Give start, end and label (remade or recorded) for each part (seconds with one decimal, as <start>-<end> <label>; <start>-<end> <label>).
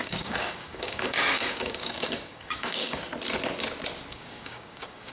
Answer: 0.0-3.1 remade; 3.1-4.1 recorded; 4.1-5.1 remade